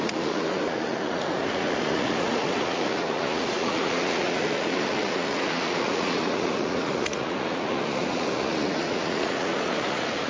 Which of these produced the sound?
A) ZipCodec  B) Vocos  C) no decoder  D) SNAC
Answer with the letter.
B